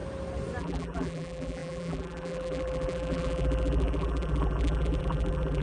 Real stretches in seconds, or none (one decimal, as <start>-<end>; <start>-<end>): 0.0-0.6